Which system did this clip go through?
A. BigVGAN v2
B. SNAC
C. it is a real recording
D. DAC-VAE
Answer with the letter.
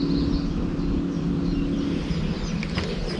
C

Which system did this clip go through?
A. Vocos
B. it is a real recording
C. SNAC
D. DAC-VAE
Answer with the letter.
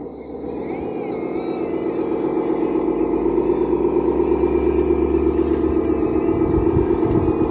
B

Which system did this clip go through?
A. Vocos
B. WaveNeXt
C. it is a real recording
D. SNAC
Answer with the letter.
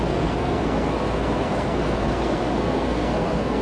D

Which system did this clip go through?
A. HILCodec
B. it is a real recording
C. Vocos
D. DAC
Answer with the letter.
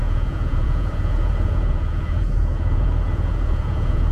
C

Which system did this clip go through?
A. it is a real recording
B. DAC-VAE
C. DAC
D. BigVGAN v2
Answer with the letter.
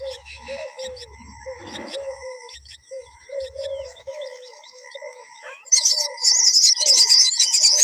B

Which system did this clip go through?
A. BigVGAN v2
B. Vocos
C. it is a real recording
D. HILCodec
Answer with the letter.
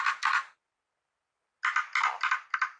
C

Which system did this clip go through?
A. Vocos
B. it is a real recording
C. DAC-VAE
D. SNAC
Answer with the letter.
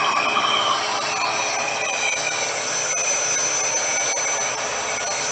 B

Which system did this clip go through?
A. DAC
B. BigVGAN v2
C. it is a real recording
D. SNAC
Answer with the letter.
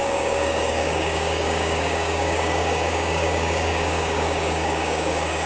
A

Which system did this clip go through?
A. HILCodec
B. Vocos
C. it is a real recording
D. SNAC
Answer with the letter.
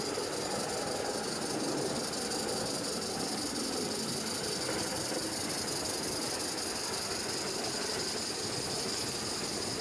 C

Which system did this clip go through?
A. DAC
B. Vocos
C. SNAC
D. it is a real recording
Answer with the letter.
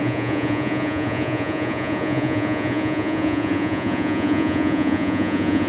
B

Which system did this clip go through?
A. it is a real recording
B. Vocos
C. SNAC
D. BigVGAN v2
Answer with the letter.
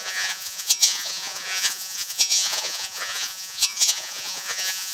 B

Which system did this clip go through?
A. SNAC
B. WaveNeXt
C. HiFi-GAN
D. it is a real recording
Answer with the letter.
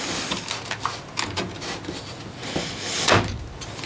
D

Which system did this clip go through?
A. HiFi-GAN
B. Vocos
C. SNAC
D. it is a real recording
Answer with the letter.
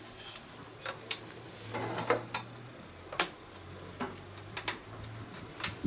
D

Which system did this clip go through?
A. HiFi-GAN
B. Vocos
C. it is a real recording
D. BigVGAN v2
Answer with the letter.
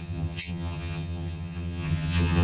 A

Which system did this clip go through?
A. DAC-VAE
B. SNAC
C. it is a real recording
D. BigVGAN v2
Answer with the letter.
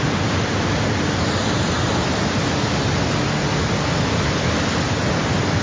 C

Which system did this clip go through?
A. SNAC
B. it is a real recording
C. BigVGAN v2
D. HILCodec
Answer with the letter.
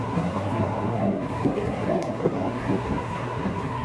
A